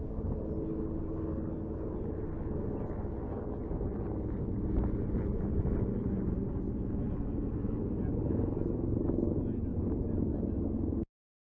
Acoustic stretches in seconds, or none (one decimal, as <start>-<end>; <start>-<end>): 0.0-11.5